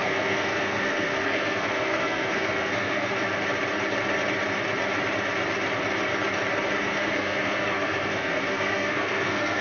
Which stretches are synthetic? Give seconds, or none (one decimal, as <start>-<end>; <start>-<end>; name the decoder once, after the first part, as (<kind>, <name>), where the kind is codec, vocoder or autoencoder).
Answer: 0.0-3.3 (codec, SNAC); 6.8-9.6